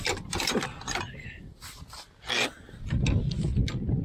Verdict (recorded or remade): recorded